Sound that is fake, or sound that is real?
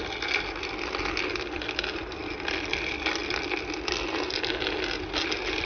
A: real